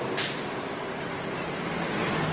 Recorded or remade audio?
recorded